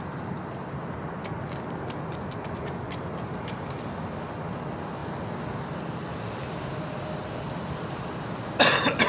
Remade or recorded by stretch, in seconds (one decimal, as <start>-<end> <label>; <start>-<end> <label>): 0.0-9.1 recorded